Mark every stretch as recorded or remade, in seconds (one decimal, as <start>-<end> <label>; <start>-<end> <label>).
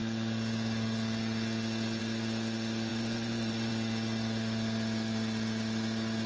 0.0-2.9 recorded; 2.9-3.7 remade; 3.7-6.3 recorded